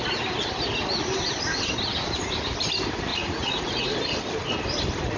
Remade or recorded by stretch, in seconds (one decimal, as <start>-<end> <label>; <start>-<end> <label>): 0.0-3.1 recorded; 3.1-3.9 remade; 3.9-5.2 recorded